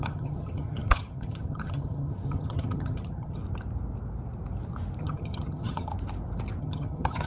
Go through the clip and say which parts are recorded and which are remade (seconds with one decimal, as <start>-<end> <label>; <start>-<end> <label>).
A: 0.0-3.4 remade; 3.4-5.0 recorded; 5.0-5.9 remade; 5.9-6.6 recorded; 6.6-7.3 remade